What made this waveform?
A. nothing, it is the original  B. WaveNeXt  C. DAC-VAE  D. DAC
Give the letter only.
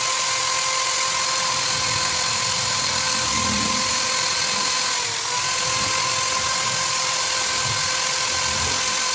A